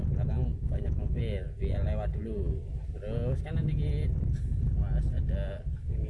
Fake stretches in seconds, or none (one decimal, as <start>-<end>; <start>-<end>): 0.5-1.2